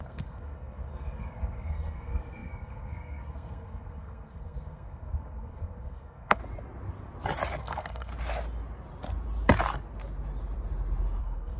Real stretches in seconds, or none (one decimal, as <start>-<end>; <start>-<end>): 6.4-7.6; 8.1-11.2